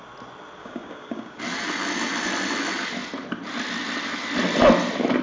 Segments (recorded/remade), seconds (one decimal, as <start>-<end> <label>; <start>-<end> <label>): 0.0-0.6 recorded; 0.6-1.4 remade; 1.4-5.2 recorded